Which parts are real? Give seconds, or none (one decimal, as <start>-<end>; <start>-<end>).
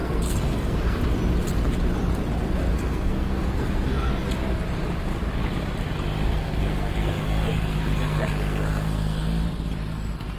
1.0-2.7; 4.1-6.3; 9.4-10.4